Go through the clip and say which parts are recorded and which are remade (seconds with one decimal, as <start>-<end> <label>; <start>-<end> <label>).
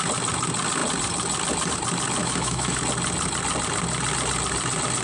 0.0-2.2 recorded; 2.2-2.8 remade; 2.8-5.0 recorded